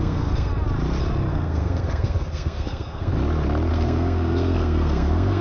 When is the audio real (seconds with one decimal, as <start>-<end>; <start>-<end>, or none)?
0.5-1.3; 3.1-3.7